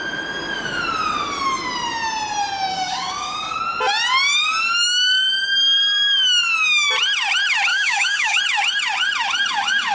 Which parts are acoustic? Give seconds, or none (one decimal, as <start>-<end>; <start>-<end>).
0.0-2.7; 3.6-7.7; 8.4-9.9